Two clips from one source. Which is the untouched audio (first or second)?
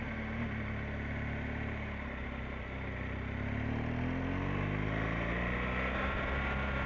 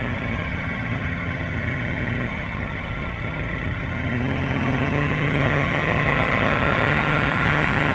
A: first